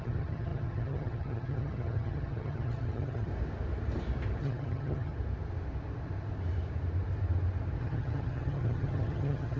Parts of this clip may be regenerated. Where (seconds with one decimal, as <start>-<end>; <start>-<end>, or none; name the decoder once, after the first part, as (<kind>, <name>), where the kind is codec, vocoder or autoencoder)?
0.0-3.3 (vocoder, HiFi-GAN); 4.4-5.1; 7.8-9.6